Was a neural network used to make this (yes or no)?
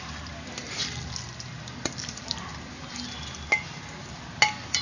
no